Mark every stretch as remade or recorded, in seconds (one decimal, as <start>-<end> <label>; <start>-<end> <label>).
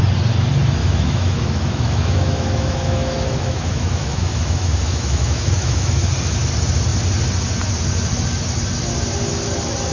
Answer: 0.0-0.8 recorded; 0.8-6.0 remade; 6.0-9.9 recorded